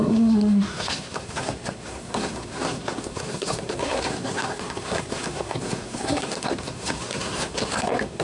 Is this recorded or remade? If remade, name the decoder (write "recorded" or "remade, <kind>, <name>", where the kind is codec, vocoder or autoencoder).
remade, codec, SNAC